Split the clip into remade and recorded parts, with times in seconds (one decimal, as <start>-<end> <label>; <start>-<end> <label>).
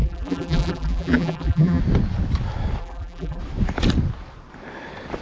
0.0-1.8 remade; 1.8-2.8 recorded; 2.8-3.4 remade; 3.4-5.2 recorded